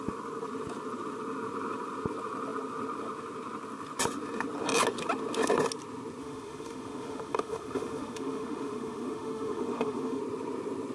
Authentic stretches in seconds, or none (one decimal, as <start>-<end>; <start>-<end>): 0.0-6.2; 10.2-10.9